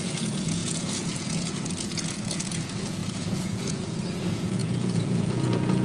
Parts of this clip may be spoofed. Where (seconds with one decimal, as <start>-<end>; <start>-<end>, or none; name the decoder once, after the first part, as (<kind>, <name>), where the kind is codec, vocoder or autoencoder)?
0.0-5.8 (vocoder, Vocos)